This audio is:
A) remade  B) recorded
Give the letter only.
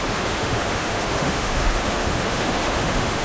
A